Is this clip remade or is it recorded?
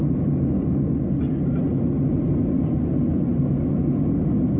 recorded